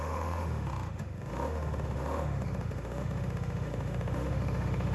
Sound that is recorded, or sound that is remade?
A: remade